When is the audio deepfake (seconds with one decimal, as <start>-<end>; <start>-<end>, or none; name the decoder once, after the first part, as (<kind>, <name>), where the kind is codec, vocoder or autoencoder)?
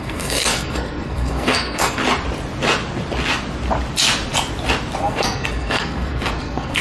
0.0-2.0 (codec, SNAC); 5.0-6.8